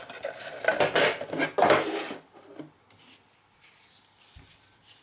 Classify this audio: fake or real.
real